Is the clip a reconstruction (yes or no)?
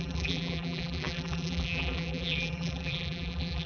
yes